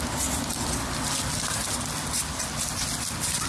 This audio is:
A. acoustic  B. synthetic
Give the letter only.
A